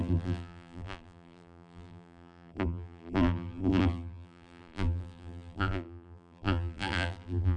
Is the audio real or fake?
fake